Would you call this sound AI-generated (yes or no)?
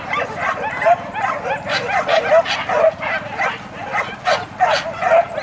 no